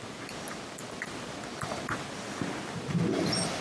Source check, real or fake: real